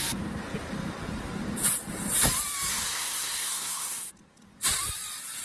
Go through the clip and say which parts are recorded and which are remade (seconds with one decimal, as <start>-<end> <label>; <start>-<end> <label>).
0.0-2.7 recorded; 2.7-4.1 remade; 4.1-5.4 recorded